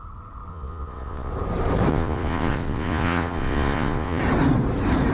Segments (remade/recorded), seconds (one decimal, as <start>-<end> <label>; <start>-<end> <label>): 0.0-0.5 recorded; 0.5-1.3 remade; 1.3-1.9 recorded; 1.9-4.2 remade; 4.2-5.1 recorded